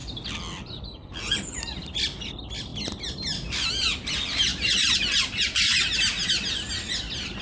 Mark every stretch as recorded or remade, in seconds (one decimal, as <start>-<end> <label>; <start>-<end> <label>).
0.0-7.4 recorded